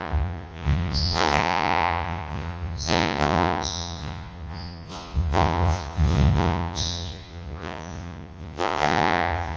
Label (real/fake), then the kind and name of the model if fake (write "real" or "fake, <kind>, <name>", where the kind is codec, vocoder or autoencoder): fake, vocoder, Vocos